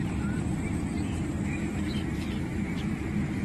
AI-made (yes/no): yes